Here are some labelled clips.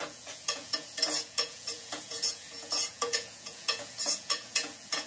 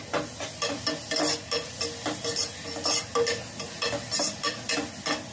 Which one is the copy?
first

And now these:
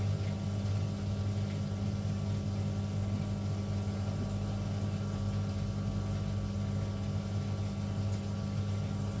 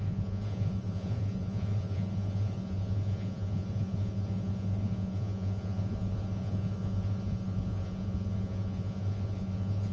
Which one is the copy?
second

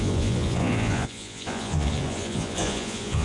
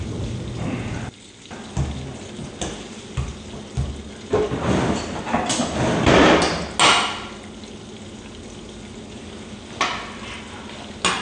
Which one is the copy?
first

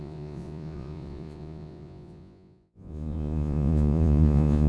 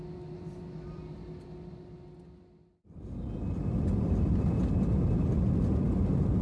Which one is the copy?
first